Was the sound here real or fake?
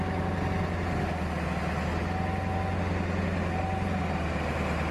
real